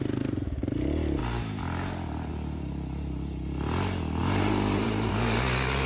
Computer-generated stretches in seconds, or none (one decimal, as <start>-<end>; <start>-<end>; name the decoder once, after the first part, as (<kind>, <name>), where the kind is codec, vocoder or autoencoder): 4.2-5.1 (vocoder, BigVGAN v2)